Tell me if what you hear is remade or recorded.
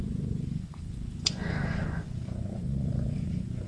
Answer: remade